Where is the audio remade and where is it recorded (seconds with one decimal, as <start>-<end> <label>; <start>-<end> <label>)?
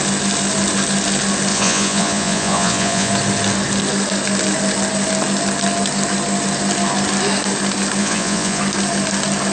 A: 0.0-1.5 recorded; 1.5-3.1 remade; 3.1-8.0 recorded; 8.0-8.6 remade; 8.6-9.5 recorded